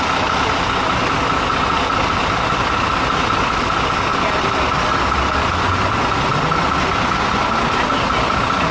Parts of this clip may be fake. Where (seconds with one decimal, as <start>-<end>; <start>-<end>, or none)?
none